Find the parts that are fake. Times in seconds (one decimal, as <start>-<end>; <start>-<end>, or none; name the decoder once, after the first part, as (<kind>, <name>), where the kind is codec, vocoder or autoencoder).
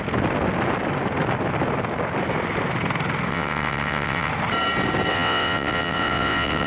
3.3-4.3 (vocoder, WaveNeXt); 5.1-6.7